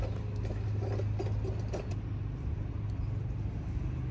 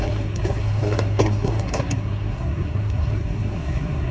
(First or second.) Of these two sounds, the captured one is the first